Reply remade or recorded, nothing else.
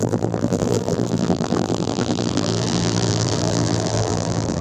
remade